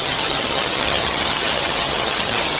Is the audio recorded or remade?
remade